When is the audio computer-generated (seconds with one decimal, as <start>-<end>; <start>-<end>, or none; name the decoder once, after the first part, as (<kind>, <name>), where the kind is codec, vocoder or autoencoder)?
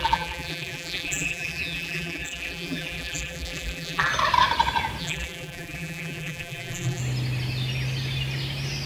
0.0-4.1 (vocoder, BigVGAN v2); 5.0-7.0